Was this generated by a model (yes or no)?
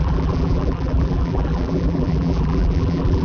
yes